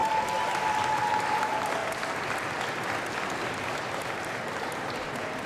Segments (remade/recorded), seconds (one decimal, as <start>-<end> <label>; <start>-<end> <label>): 0.0-5.5 recorded